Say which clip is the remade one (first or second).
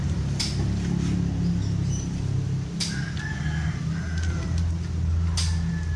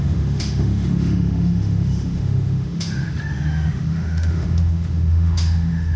second